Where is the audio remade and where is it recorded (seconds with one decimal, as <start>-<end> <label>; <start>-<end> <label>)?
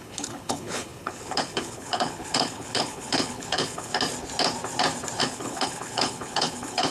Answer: 0.0-3.9 remade; 3.9-5.2 recorded; 5.2-6.9 remade